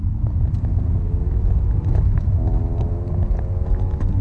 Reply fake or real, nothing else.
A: real